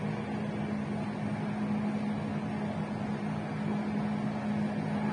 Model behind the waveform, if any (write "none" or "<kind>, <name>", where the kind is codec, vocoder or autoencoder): none